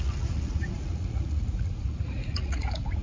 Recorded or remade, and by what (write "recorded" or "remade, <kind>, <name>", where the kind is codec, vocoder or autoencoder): remade, vocoder, Vocos